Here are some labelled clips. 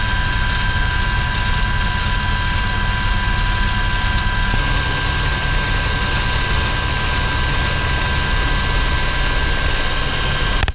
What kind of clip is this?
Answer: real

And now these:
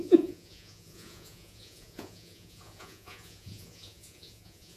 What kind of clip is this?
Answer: fake